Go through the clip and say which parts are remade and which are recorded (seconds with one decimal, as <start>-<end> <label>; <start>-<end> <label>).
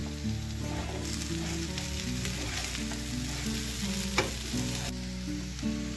0.0-6.0 recorded